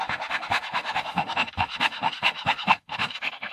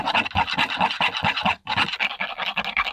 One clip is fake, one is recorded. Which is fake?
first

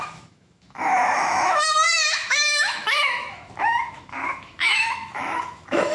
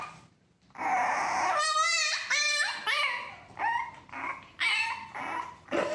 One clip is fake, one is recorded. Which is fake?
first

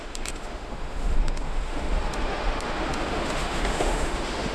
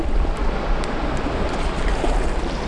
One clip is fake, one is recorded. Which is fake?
first